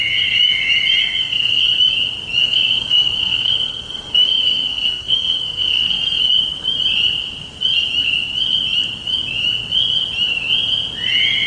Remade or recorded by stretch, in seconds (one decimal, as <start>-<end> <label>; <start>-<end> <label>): 0.0-1.0 recorded; 1.0-1.6 remade; 1.6-2.4 recorded; 2.4-6.3 remade; 6.3-11.5 recorded